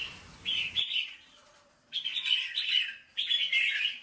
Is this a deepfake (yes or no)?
yes